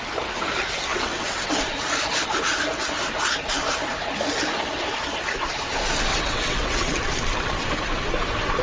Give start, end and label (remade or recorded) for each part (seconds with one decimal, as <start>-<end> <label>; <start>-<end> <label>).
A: 0.0-0.9 recorded; 0.9-1.6 remade; 1.6-6.1 recorded; 6.1-6.9 remade; 6.9-8.6 recorded

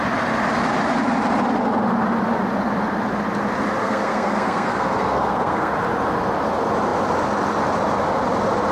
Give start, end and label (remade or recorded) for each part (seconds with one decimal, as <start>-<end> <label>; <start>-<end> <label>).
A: 0.0-3.8 recorded; 3.8-5.7 remade; 5.7-8.7 recorded

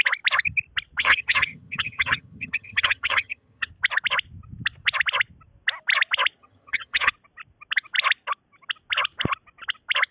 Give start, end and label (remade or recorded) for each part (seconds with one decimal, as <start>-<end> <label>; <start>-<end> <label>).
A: 0.0-1.0 recorded; 1.0-3.7 remade; 3.7-6.4 recorded; 6.4-7.1 remade; 7.1-10.1 recorded

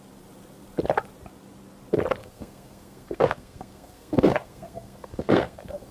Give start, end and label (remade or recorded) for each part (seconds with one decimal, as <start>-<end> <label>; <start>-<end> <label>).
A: 0.0-2.2 recorded; 2.2-5.9 remade

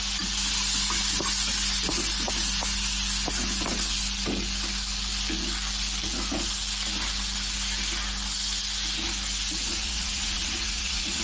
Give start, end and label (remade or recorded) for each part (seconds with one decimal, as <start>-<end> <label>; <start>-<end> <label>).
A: 0.0-9.7 recorded; 9.7-11.2 remade